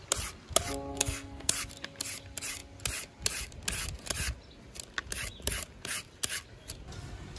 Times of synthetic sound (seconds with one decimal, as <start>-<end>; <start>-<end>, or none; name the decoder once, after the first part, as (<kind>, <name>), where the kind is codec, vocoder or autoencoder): 0.9-1.5 (codec, SNAC)